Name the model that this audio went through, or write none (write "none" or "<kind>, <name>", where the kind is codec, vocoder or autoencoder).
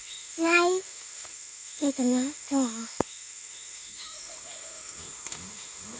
autoencoder, DAC-VAE